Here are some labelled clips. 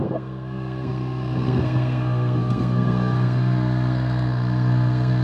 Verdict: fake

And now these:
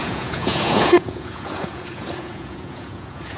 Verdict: fake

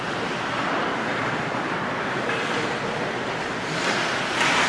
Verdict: real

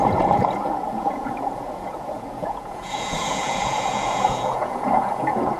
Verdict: fake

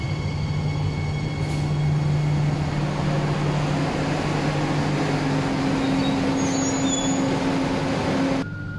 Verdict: real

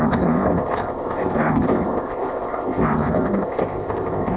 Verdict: fake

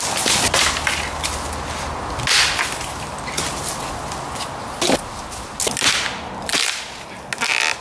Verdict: real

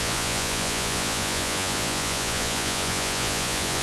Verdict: fake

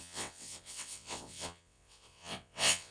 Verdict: fake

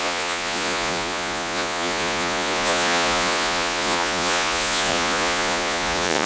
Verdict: fake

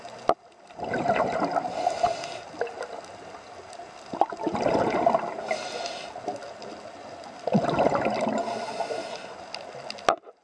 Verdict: real